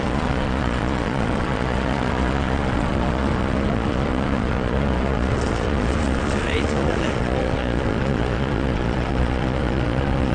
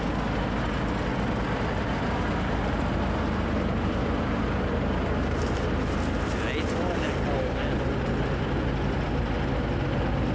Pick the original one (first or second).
second